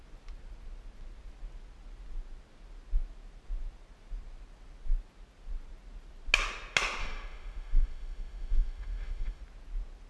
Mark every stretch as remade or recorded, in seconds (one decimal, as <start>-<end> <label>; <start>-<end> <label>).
0.0-7.0 recorded; 7.0-9.4 remade; 9.4-10.1 recorded